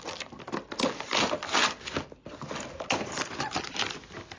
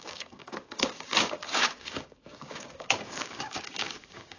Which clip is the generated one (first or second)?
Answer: second